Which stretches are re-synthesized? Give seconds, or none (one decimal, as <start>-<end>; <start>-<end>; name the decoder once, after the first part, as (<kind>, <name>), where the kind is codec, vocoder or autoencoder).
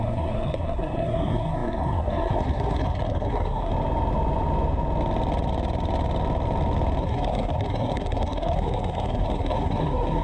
0.0-3.7 (codec, SNAC); 7.0-10.2